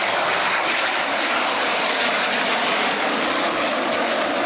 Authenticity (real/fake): fake